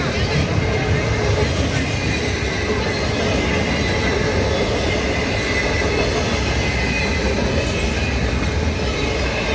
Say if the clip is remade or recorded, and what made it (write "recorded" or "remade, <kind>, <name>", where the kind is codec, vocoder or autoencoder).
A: recorded